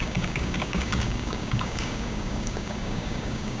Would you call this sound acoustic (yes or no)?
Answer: no